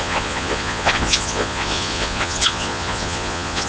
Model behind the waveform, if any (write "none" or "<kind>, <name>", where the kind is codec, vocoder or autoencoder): vocoder, Vocos